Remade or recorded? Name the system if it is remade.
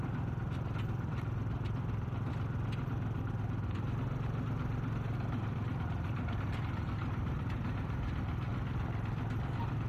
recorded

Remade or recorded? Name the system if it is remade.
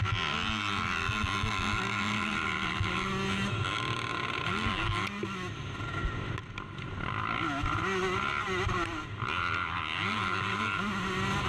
recorded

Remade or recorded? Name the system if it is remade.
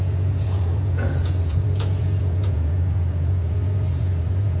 remade, vocoder, Vocos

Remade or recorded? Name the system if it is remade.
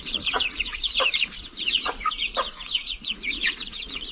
remade, vocoder, Vocos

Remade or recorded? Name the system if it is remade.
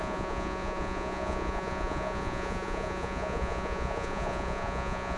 remade, vocoder, Vocos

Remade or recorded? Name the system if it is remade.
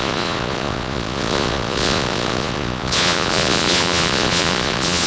remade, vocoder, Vocos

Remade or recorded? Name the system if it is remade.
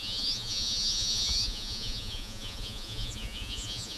remade, vocoder, Vocos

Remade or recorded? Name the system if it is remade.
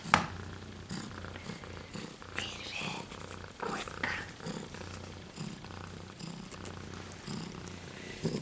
recorded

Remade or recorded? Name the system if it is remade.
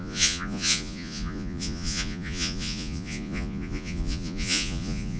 remade, vocoder, Vocos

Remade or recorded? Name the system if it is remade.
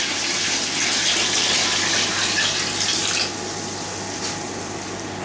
recorded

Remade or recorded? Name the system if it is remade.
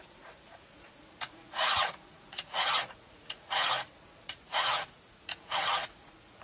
remade, vocoder, Vocos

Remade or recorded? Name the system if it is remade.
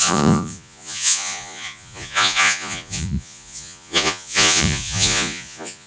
remade, vocoder, Vocos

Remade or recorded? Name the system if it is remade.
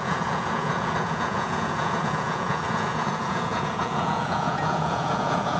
remade, vocoder, Vocos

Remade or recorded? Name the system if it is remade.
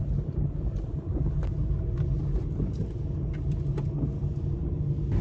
recorded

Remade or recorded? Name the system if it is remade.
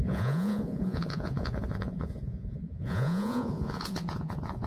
remade, vocoder, Vocos